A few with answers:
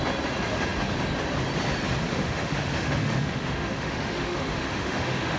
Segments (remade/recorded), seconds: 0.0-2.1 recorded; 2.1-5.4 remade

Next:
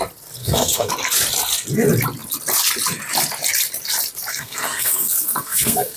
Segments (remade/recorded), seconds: 0.0-0.4 recorded; 0.4-0.9 remade; 0.9-4.3 recorded; 4.3-6.0 remade

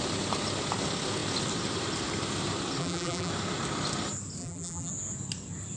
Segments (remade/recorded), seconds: 0.0-2.8 recorded; 2.8-3.3 remade; 3.3-4.4 recorded; 4.4-4.9 remade; 4.9-5.8 recorded

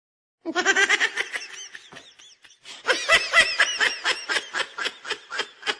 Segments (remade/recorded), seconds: 0.0-5.8 recorded

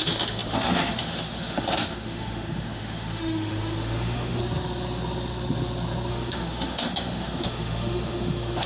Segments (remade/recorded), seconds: 0.0-4.4 remade; 4.4-6.1 recorded; 6.1-8.7 remade

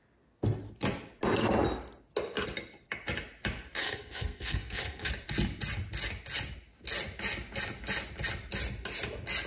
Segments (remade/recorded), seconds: 0.0-3.8 recorded; 3.8-5.1 remade; 5.1-9.5 recorded